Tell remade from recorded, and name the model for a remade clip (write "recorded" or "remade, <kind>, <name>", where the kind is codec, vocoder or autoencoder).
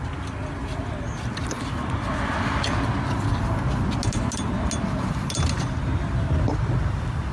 recorded